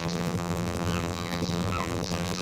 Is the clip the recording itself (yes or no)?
no